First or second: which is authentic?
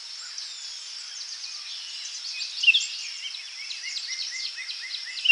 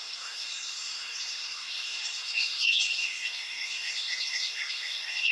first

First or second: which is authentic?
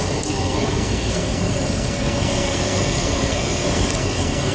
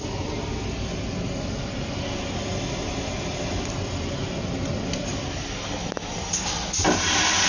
second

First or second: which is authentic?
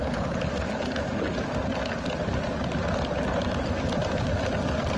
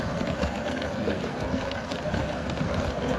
first